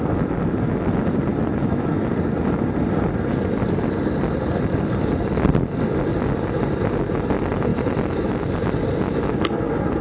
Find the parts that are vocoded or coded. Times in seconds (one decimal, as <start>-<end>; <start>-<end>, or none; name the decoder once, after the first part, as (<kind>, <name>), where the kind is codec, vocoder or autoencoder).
1.3-2.0 (autoencoder, DAC-VAE)